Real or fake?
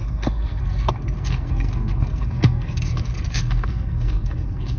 fake